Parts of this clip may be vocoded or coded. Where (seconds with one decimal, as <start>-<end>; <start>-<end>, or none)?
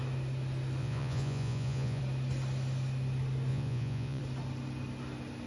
0.8-2.0; 3.5-4.2